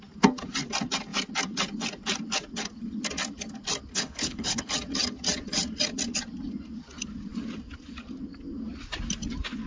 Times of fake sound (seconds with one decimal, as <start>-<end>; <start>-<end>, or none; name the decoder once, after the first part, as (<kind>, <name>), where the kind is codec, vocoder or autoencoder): 3.9-4.7 (codec, HILCodec)